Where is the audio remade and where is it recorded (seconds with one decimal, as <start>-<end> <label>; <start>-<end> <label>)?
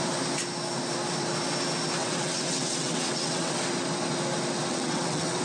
0.0-2.0 recorded; 2.0-3.5 remade; 3.5-4.7 recorded; 4.7-5.4 remade